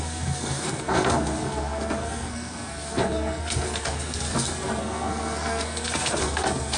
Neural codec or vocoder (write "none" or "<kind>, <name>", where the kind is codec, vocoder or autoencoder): codec, SNAC